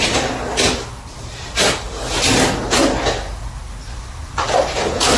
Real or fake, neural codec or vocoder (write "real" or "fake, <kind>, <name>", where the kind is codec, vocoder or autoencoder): real